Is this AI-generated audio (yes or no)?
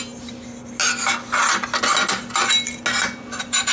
no